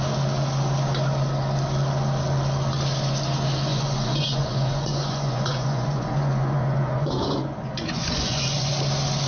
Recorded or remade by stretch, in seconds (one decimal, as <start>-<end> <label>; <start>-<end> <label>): 0.0-3.7 recorded; 3.7-8.7 remade; 8.7-9.3 recorded